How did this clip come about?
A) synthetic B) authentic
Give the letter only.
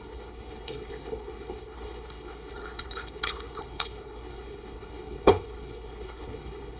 A